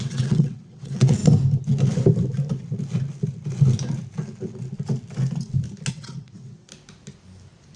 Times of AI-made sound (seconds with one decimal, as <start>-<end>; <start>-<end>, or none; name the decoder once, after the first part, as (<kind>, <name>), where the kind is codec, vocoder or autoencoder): 0.0-1.2 (vocoder, WaveNeXt); 5.9-6.7